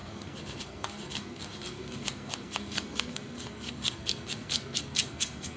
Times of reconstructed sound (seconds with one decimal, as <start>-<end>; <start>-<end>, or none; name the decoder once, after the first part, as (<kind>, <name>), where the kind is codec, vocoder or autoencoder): 0.0-5.6 (codec, SNAC)